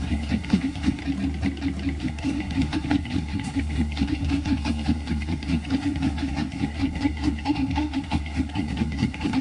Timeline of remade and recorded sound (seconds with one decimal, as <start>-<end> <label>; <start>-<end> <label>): 0.0-1.0 remade; 1.0-2.0 recorded; 2.0-9.4 remade